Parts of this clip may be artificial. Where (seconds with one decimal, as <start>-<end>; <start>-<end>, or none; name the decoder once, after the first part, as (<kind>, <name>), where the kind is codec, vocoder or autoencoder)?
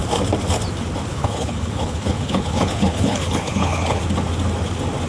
1.1-4.0 (codec, HILCodec)